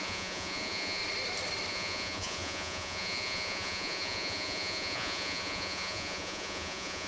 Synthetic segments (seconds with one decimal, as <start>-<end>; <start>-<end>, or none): 0.0-1.0; 1.7-7.1